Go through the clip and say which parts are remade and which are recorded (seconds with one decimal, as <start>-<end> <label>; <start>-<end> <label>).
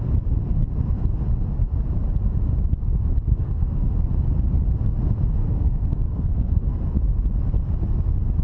0.0-3.3 recorded; 3.3-3.9 remade; 3.9-5.4 recorded; 5.4-6.8 remade; 6.8-8.4 recorded